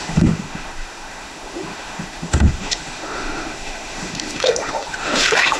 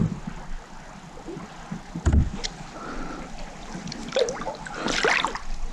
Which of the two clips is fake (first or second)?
first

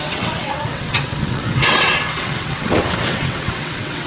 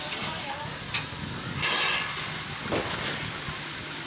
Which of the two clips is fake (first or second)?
first